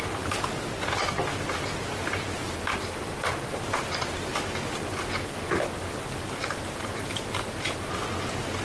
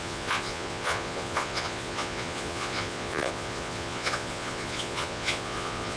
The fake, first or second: second